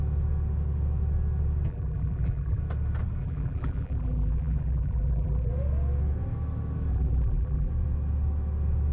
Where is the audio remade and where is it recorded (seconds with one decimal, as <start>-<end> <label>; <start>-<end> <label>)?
0.0-1.7 recorded; 1.7-2.6 remade; 2.6-3.2 recorded; 3.2-5.5 remade; 5.5-6.9 recorded; 6.9-7.7 remade; 7.7-8.9 recorded